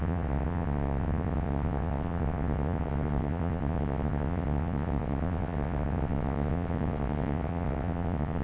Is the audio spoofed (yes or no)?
yes